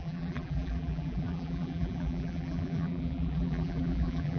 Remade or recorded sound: remade